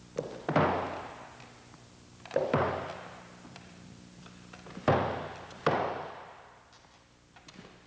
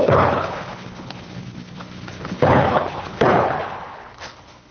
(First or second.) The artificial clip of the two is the second